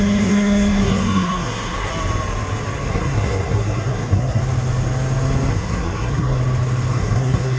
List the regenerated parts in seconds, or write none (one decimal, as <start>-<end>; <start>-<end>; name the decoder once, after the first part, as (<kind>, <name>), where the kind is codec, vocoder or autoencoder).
0.0-1.9 (codec, SNAC); 2.9-4.4; 5.5-6.4; 6.9-7.6